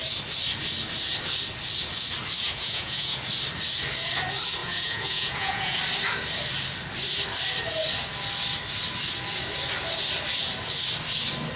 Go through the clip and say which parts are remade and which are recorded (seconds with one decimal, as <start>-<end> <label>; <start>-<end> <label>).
0.0-2.4 recorded; 2.4-3.3 remade; 3.3-4.6 recorded; 4.6-5.8 remade; 5.8-11.6 recorded

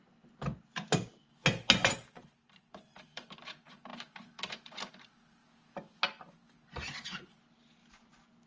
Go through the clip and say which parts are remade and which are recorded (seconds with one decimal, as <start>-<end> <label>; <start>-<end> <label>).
0.0-1.9 recorded; 1.9-5.4 remade; 5.4-8.5 recorded

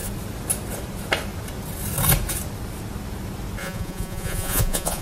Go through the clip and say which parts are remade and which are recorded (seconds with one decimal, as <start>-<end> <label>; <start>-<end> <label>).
0.0-3.6 recorded; 3.6-5.0 remade

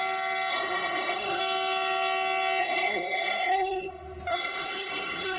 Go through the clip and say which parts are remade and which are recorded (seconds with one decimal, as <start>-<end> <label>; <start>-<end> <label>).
0.0-0.5 recorded; 0.5-1.4 remade; 1.4-2.6 recorded; 2.6-3.9 remade; 3.9-4.3 recorded; 4.3-5.4 remade